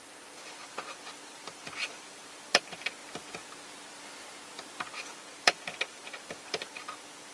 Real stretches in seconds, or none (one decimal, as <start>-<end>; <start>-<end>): 3.0-5.0